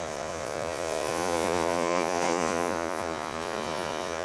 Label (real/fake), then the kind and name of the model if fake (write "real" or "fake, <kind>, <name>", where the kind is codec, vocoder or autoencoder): fake, vocoder, Vocos